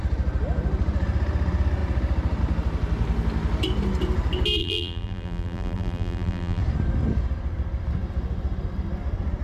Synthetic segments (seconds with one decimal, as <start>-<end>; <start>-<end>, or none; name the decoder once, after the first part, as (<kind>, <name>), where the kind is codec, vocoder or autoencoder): 4.6-6.6 (vocoder, BigVGAN v2)